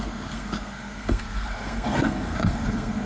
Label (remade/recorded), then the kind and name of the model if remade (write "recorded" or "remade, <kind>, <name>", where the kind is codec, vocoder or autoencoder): remade, codec, SNAC